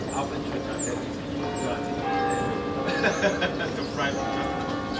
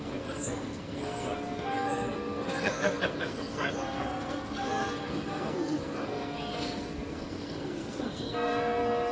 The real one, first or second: first